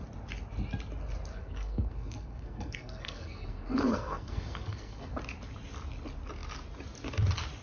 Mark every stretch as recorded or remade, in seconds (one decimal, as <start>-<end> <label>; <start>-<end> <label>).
0.0-1.3 recorded; 1.3-5.1 remade; 5.1-7.6 recorded